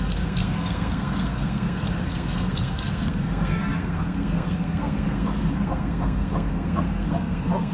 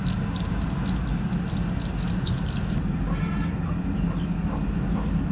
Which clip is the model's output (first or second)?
first